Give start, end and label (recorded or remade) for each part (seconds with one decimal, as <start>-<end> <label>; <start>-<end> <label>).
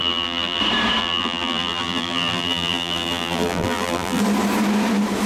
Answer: 0.0-0.6 remade; 0.6-1.0 recorded; 1.0-4.2 remade; 4.2-5.3 recorded